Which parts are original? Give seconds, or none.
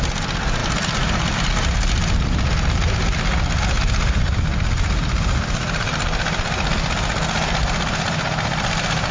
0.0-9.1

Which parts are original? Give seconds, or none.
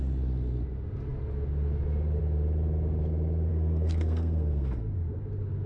0.0-3.5; 4.9-5.7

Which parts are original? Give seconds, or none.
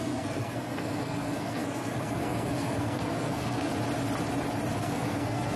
3.7-4.7